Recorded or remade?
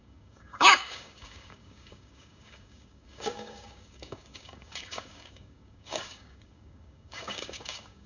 remade